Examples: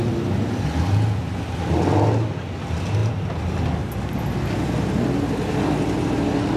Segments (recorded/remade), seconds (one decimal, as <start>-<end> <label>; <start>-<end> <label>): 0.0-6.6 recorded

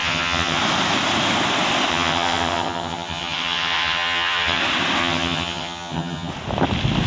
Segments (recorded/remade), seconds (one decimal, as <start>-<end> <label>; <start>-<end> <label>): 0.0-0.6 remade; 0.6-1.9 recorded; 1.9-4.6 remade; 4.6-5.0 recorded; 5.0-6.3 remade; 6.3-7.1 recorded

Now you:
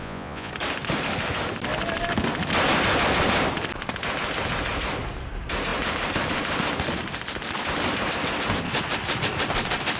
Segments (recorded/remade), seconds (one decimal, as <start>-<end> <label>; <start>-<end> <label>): 0.0-0.5 remade; 0.5-10.0 recorded

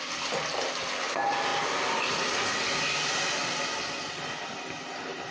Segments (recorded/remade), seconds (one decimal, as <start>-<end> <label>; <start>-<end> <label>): 0.0-5.3 recorded

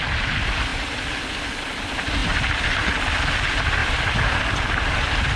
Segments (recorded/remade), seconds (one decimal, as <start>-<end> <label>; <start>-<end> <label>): 0.0-2.2 recorded; 2.2-3.2 remade; 3.2-3.8 recorded; 3.8-4.4 remade; 4.4-5.4 recorded

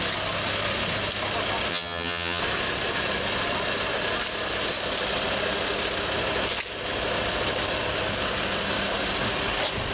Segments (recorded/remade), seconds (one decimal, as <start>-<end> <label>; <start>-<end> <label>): 0.0-1.7 recorded; 1.7-2.4 remade; 2.4-9.9 recorded

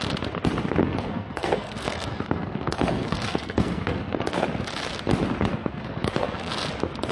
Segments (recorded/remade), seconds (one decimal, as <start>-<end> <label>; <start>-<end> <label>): 0.0-0.8 recorded; 0.8-4.2 remade; 4.2-5.5 recorded; 5.5-6.5 remade; 6.5-7.1 recorded

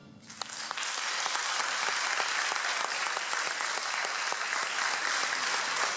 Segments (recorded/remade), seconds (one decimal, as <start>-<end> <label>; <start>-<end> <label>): 0.0-6.0 recorded